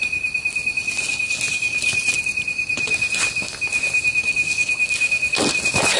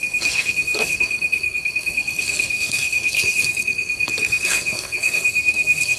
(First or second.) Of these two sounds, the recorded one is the first